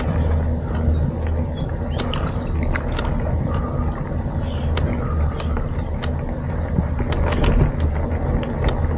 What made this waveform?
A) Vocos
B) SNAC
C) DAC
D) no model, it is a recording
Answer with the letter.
D